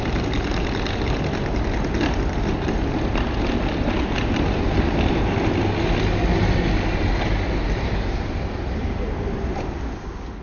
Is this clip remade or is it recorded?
recorded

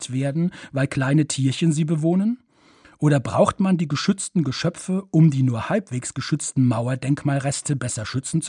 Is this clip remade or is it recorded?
recorded